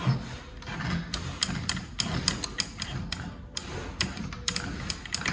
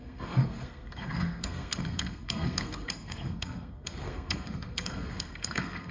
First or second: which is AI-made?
second